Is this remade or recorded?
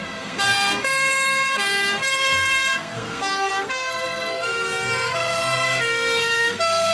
remade